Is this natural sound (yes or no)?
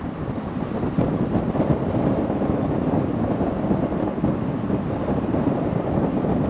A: yes